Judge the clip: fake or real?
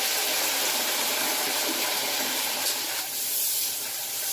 fake